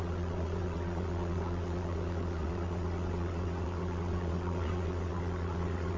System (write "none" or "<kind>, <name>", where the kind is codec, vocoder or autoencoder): vocoder, WaveNeXt